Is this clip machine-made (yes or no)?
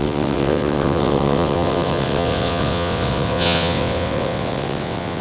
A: yes